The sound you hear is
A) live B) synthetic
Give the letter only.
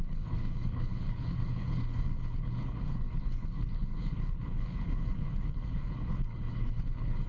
B